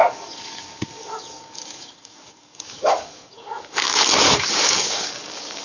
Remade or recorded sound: remade